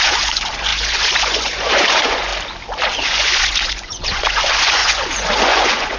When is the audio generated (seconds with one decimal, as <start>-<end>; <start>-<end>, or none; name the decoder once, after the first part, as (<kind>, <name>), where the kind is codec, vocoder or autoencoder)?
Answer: 0.0-2.3 (vocoder, Vocos); 2.9-6.0